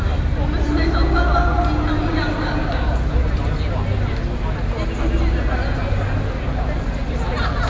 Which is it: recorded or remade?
recorded